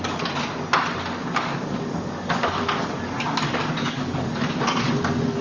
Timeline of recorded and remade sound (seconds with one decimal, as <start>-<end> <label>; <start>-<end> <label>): 0.0-1.2 recorded; 1.2-4.4 remade; 4.4-5.4 recorded